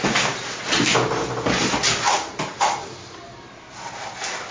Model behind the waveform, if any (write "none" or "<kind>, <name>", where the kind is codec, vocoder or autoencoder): none